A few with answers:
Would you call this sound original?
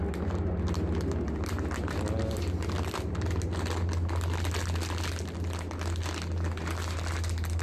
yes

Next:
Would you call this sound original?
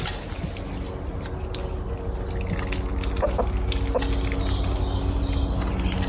yes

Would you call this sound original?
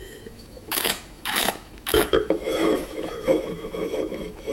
no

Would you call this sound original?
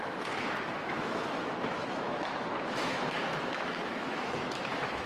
no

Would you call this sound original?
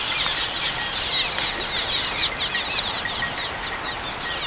yes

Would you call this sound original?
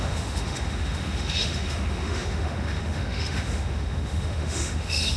no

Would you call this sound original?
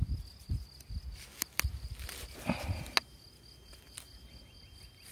yes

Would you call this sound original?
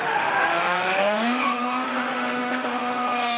no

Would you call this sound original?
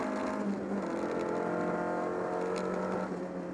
yes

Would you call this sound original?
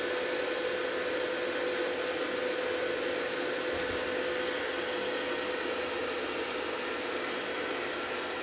yes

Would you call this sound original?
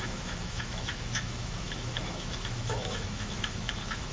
no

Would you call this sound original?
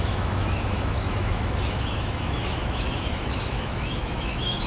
no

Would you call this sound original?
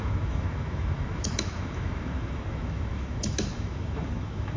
no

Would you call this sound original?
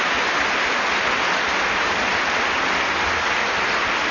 yes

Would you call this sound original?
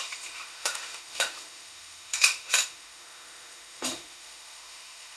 no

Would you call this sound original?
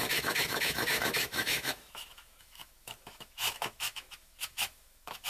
no